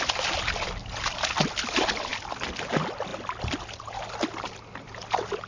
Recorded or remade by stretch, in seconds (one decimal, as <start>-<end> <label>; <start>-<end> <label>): 0.0-5.5 recorded